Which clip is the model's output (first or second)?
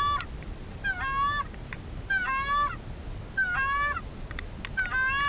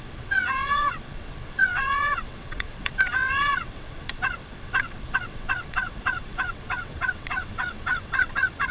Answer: second